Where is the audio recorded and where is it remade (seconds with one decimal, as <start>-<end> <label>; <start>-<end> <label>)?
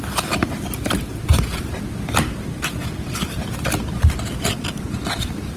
0.0-5.6 recorded